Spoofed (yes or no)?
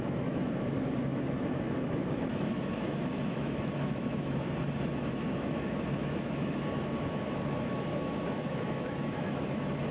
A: yes